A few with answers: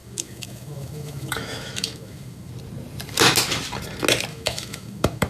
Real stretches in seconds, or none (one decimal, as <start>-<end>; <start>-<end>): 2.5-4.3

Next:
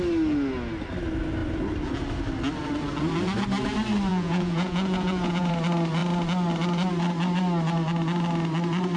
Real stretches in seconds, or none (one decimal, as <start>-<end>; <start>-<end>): 0.0-4.1; 5.5-9.0

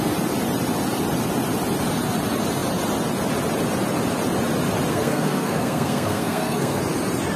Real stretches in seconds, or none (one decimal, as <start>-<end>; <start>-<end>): 0.0-4.9; 6.8-7.4

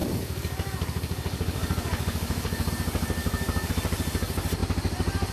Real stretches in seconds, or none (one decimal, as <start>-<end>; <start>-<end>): 2.7-3.2; 3.7-5.3

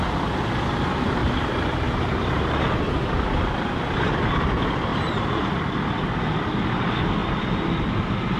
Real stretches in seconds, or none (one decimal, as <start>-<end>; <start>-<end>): 0.0-1.2; 2.5-4.9; 5.7-8.4